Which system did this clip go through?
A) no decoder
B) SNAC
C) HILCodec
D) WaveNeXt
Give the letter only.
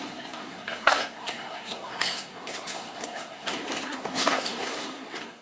B